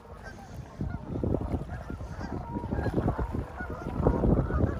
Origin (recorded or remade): recorded